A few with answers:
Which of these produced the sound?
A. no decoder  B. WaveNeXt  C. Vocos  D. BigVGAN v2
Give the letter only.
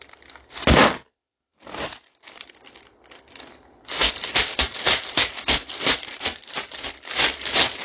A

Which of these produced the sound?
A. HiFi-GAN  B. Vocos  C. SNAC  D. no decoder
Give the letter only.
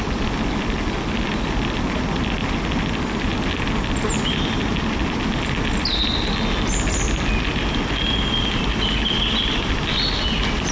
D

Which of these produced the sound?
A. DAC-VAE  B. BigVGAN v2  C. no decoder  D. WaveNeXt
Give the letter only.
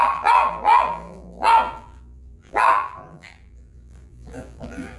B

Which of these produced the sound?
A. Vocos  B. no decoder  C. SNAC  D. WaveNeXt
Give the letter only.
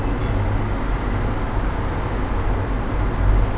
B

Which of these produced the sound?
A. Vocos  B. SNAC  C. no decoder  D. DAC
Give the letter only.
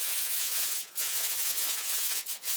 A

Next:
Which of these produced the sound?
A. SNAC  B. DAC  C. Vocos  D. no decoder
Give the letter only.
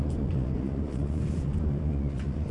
C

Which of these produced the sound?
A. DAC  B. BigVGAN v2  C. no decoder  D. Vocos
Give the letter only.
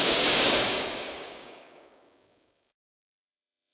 A